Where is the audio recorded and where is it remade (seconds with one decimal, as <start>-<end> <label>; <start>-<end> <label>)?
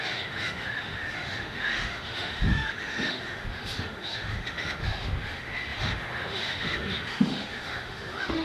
0.0-8.4 remade